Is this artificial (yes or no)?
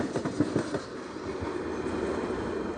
no